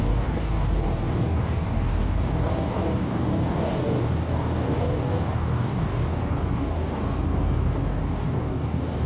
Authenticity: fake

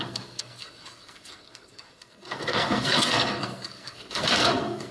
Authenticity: fake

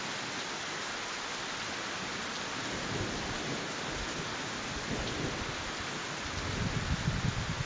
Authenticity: real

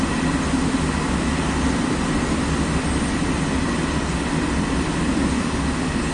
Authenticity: real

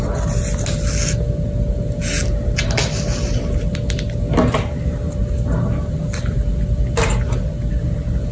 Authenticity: real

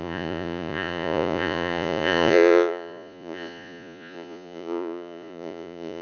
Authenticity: fake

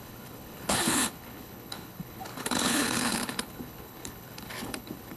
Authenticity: fake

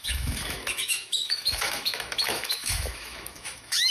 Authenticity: fake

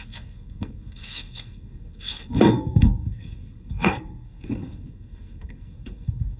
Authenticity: fake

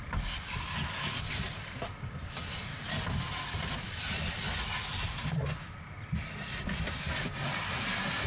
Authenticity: real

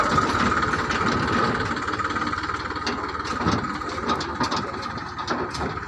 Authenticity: real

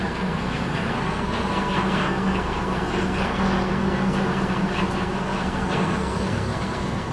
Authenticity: fake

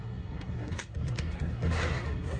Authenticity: fake